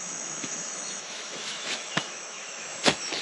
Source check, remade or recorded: remade